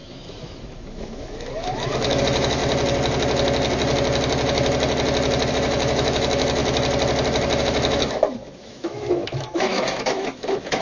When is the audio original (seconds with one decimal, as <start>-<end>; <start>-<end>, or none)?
2.6-5.5; 6.6-7.6